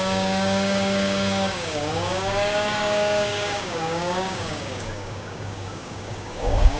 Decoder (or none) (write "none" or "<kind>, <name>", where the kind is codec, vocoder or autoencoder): codec, DAC